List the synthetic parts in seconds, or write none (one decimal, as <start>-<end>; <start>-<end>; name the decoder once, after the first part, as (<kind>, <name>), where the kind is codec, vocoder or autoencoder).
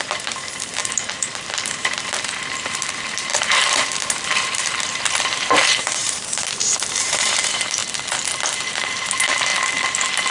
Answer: 0.0-7.8 (vocoder, BigVGAN v2); 8.7-9.5